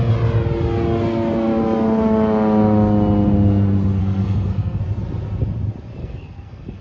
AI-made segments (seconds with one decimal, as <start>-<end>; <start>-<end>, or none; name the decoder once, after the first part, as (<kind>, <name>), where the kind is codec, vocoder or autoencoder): 4.0-4.8 (codec, SNAC); 6.0-6.8

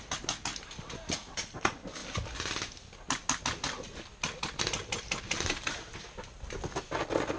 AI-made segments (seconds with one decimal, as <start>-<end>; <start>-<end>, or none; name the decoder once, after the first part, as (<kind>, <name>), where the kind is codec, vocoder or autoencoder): none

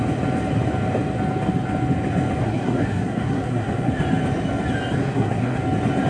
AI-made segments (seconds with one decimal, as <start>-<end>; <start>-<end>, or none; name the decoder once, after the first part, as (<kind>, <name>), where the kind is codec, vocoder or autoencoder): 2.4-3.9 (codec, SNAC); 5.0-5.6